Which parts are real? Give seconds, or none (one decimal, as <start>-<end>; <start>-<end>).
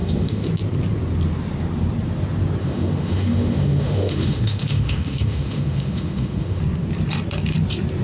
0.5-2.6; 6.6-8.0